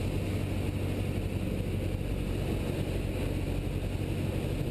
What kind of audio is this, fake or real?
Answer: real